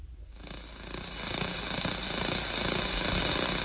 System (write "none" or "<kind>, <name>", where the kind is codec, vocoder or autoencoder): none